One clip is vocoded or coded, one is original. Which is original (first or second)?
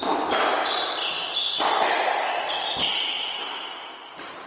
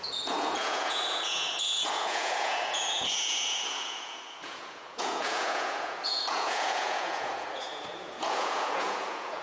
first